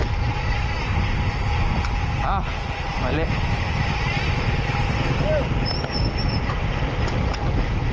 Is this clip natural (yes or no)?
yes